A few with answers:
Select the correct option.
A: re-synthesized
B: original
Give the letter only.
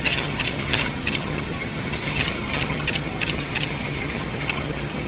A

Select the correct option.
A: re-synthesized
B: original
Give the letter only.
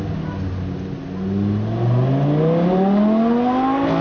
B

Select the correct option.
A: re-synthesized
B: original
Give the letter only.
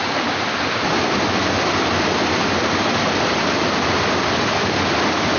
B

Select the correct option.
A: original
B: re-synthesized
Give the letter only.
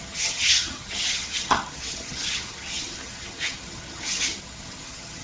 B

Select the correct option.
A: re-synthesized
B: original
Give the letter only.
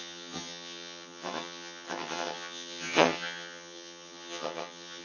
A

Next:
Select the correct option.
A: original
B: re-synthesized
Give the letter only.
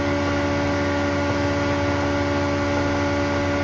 A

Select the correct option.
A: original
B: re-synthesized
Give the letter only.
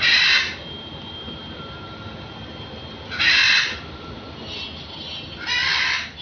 A